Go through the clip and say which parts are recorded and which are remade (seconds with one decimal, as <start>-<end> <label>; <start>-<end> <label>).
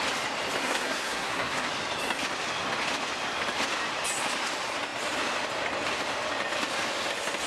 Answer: 0.0-0.6 recorded; 0.6-1.7 remade; 1.7-7.5 recorded